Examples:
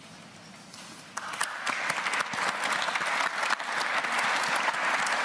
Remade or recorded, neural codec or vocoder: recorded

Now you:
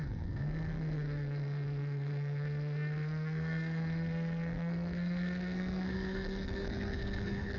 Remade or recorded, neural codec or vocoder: remade, codec, SNAC